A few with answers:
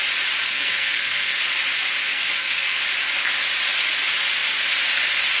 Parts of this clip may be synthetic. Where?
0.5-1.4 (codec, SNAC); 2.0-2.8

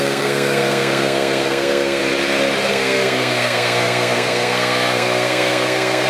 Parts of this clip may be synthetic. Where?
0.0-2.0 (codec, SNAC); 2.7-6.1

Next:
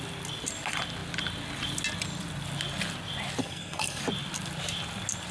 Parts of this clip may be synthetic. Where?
3.4-4.0 (codec, SNAC)

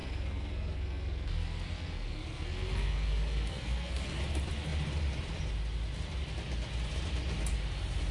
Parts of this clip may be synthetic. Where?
0.0-4.2 (codec, SNAC)

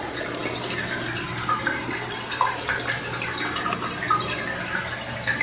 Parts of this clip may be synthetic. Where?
none

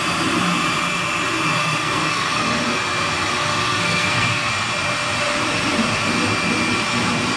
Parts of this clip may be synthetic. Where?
1.6-2.6 (codec, SNAC); 3.5-4.5

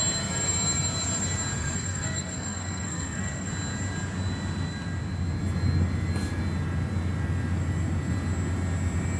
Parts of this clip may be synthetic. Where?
1.6-3.5 (codec, SNAC)

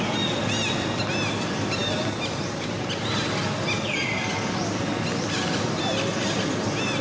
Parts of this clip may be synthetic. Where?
none